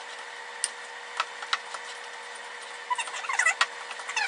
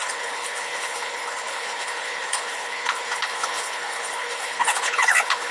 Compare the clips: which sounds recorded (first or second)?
first